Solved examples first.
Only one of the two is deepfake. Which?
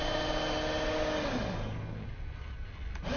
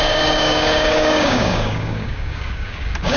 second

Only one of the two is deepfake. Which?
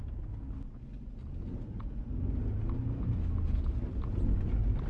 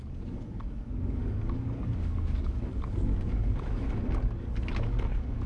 second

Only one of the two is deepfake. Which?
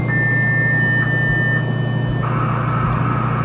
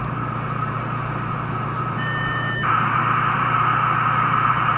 second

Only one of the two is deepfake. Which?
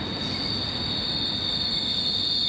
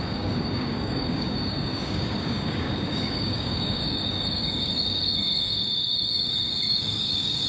second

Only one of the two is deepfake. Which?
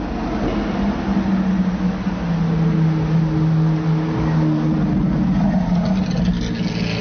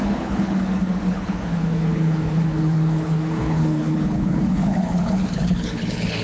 second